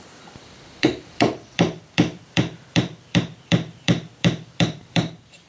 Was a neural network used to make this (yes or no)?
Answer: yes